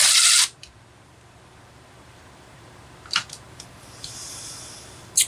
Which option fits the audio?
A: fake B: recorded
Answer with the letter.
A